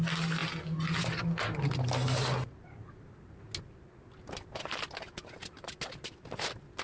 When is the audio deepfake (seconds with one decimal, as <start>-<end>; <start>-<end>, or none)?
none